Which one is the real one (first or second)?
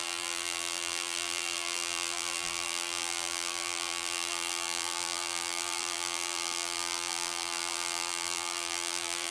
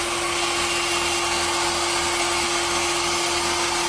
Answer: second